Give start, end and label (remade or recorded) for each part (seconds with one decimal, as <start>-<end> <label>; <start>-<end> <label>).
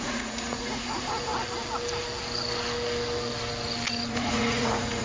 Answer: 0.0-1.3 remade; 1.3-4.1 recorded; 4.1-5.0 remade